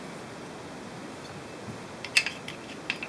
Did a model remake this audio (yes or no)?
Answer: no